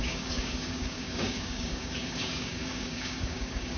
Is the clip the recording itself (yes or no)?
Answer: no